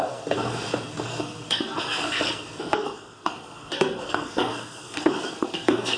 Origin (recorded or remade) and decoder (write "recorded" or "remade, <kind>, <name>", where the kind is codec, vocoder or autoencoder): remade, codec, SNAC